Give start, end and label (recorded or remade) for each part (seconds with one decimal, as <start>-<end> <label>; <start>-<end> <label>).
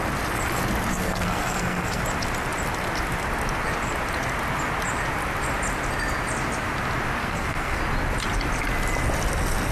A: 0.0-0.9 recorded; 0.9-2.0 remade; 2.0-7.2 recorded; 7.2-7.8 remade; 7.8-9.7 recorded